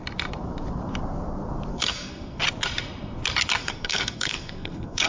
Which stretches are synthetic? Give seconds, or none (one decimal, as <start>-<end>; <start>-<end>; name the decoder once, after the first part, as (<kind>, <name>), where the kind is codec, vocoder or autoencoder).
1.7-2.4 (codec, SNAC); 3.6-5.1